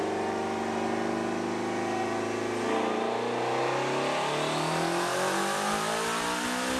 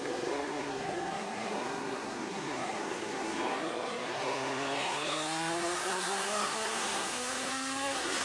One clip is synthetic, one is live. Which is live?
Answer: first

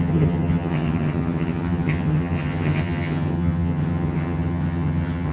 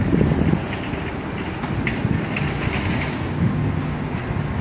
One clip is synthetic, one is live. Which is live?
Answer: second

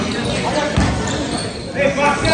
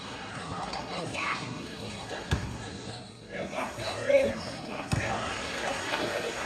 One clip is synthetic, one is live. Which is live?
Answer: first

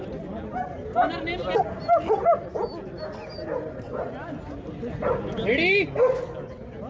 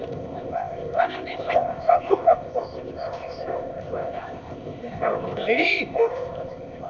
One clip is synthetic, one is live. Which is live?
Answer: first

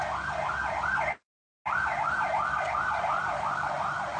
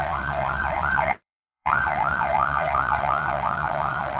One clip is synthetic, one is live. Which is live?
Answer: first